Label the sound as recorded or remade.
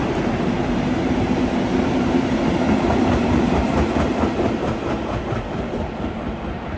remade